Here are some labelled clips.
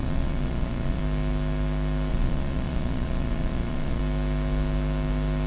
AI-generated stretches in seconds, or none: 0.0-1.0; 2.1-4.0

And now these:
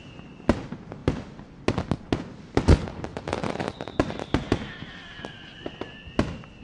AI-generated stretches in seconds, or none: 3.1-4.2